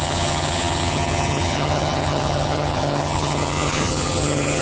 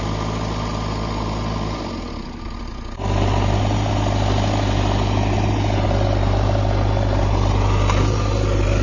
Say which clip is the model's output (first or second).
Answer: first